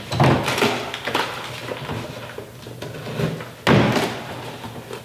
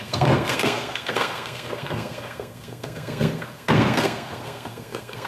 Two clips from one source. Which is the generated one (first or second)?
second